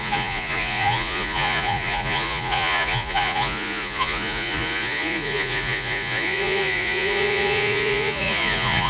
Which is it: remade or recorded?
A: remade